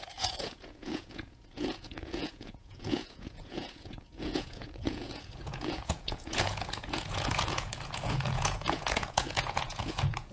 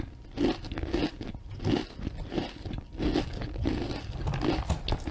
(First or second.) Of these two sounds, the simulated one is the first